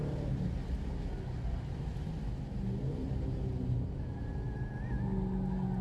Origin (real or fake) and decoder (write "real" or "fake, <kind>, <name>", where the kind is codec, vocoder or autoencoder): real